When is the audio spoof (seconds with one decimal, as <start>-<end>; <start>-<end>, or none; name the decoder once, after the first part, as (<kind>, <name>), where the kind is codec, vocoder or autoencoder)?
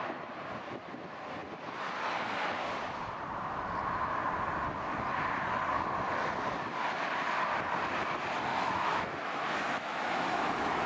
8.5-10.9 (autoencoder, DAC-VAE)